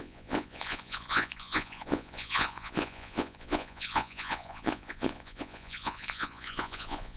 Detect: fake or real fake